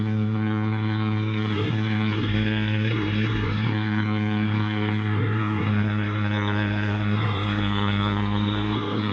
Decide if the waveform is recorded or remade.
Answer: remade